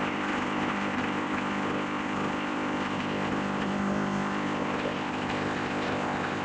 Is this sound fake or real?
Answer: fake